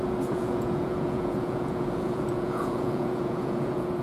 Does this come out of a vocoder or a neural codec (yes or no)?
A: yes